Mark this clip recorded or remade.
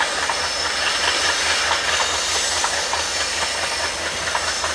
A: recorded